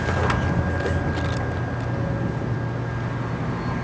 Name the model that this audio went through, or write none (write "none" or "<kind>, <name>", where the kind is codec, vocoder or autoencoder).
none